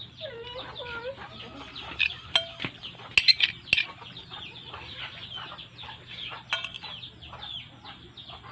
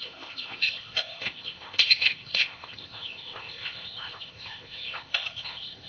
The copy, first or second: second